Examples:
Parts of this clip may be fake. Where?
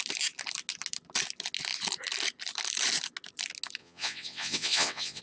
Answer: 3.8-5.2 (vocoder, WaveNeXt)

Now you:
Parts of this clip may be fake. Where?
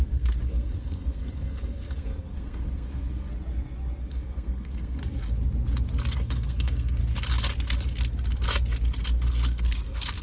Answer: 0.0-3.3 (codec, SNAC); 4.0-5.0; 6.1-7.0; 9.3-10.2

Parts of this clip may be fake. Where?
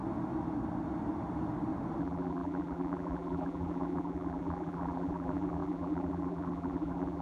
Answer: 2.0-7.2 (vocoder, BigVGAN v2)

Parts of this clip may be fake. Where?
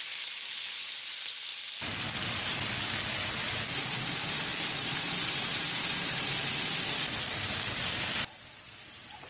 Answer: none